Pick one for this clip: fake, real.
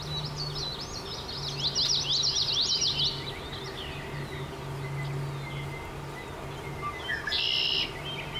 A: real